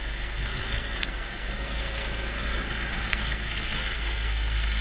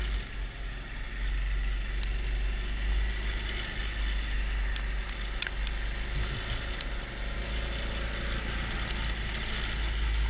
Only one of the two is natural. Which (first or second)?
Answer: second